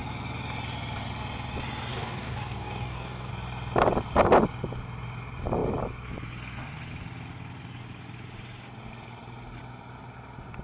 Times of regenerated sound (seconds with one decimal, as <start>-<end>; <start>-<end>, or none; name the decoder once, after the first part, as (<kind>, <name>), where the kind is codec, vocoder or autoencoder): 1.9-3.3 (codec, DAC)